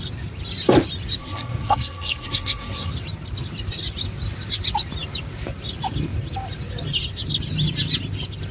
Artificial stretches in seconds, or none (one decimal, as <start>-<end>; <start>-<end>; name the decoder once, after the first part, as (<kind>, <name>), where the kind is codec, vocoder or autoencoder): 1.2-2.9 (codec, SNAC)